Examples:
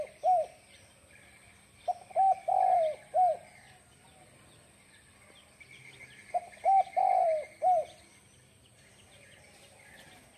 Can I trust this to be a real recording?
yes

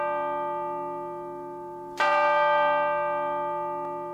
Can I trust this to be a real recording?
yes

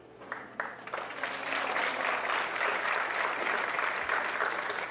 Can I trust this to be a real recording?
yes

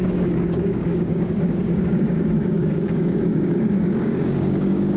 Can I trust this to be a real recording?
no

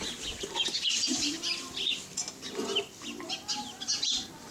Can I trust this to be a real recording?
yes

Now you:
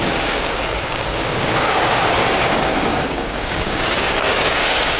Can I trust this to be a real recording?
no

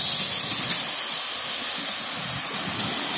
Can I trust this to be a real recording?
yes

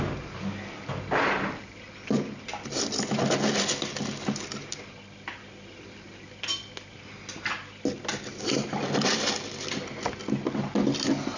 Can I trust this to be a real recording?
yes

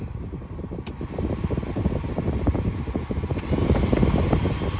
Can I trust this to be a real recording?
yes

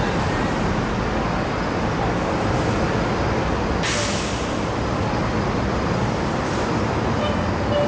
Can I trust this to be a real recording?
yes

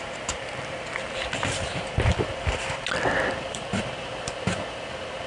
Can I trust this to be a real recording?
yes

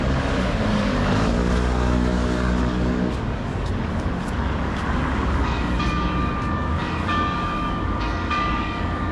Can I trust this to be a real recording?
no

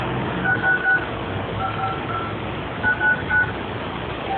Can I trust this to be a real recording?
no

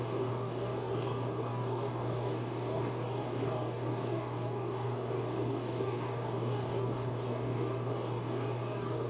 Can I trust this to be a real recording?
no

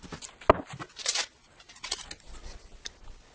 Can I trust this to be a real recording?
yes